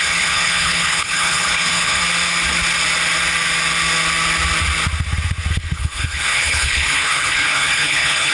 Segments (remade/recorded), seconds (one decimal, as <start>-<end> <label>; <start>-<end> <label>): 0.0-2.0 remade; 2.0-5.5 recorded; 5.5-8.3 remade